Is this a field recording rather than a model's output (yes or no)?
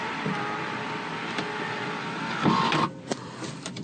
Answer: no